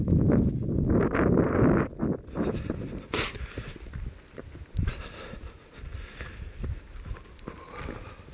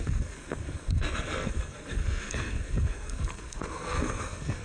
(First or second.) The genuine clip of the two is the first